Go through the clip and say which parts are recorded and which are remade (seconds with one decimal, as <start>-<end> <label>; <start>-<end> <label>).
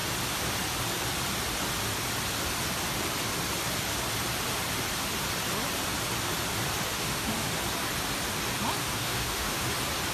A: 0.0-6.9 recorded; 6.9-7.6 remade; 7.6-8.8 recorded; 8.8-9.7 remade; 9.7-10.1 recorded